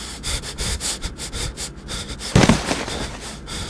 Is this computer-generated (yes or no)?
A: no